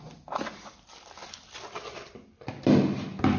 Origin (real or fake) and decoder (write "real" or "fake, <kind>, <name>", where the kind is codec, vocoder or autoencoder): real